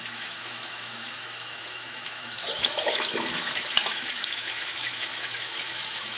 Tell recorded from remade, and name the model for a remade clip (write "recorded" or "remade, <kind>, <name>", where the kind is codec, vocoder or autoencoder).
remade, autoencoder, DAC-VAE